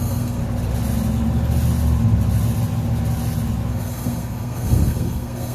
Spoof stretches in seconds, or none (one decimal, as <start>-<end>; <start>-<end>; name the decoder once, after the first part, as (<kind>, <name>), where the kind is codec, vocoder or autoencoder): 0.0-0.4 (codec, SNAC); 3.7-5.5